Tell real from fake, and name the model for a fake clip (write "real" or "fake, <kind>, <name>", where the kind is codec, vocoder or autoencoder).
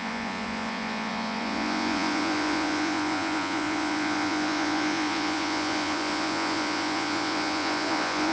fake, vocoder, Vocos